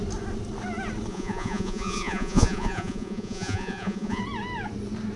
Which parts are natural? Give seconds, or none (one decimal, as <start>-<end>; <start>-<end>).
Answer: 0.0-1.1; 4.2-5.2